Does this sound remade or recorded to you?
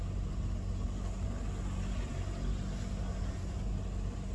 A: recorded